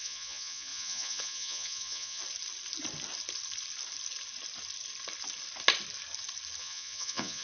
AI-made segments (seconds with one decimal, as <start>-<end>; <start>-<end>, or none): 0.0-2.2; 6.6-7.4